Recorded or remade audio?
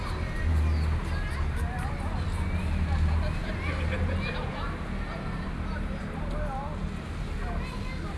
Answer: recorded